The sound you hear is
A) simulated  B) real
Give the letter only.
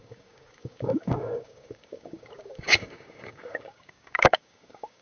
A